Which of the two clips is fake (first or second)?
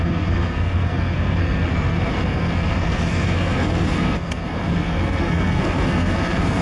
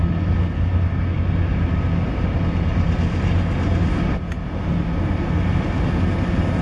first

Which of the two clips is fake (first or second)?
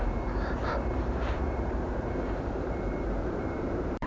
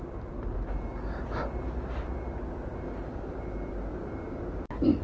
first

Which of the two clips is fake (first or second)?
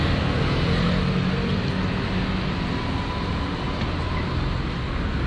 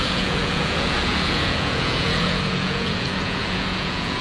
second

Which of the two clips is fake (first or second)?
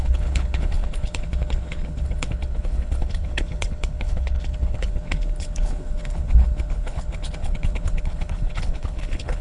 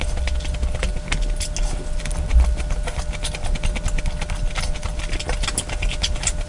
first